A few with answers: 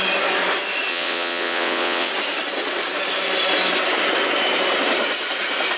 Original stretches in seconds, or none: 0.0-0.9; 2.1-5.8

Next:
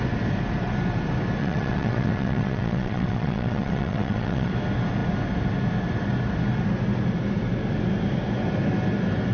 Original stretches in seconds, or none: 0.0-1.4; 4.5-9.3

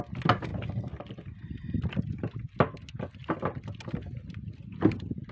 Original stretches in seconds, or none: 0.0-5.3

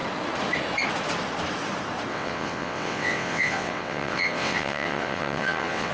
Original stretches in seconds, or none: 0.0-2.1